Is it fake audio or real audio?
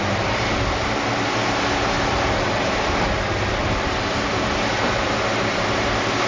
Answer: real